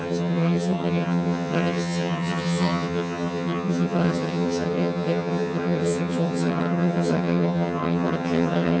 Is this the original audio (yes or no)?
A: no